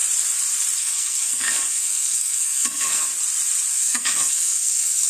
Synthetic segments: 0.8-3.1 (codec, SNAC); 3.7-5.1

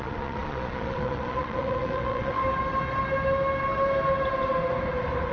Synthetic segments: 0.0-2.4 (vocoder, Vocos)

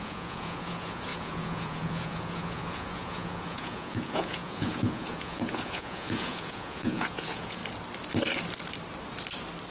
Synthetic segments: 0.0-7.6 (vocoder, Vocos)

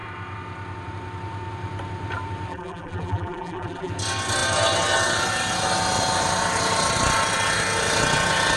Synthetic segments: 2.5-3.9 (vocoder, BigVGAN v2)